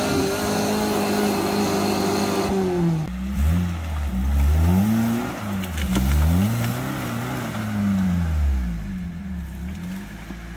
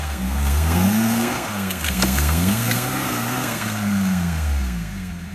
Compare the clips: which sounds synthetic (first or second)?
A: second